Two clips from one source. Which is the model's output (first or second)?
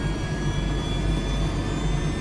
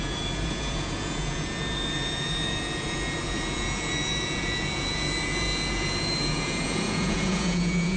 second